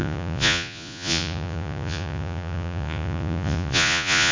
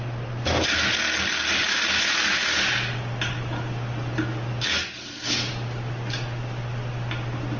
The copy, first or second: first